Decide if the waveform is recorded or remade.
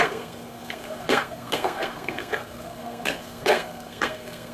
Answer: remade